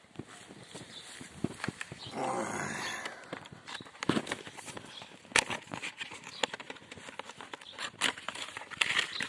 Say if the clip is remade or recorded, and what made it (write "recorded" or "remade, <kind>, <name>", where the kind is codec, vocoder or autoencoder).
recorded